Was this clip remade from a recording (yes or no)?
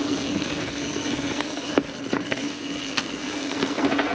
yes